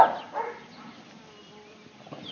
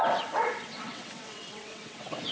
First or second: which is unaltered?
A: first